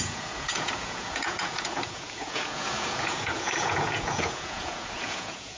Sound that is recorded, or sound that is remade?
remade